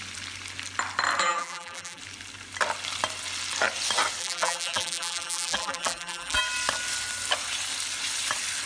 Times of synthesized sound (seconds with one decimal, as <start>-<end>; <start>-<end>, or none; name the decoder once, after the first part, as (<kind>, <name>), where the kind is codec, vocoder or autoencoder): 1.2-2.0 (vocoder, BigVGAN v2); 4.2-6.4